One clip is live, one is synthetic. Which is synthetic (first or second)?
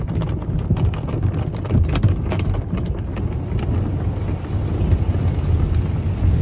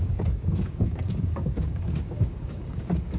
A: second